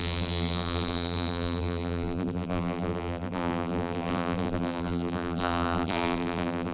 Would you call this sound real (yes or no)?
no